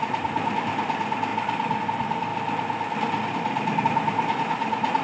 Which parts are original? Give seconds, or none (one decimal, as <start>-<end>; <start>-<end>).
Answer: 1.3-1.8; 2.3-3.8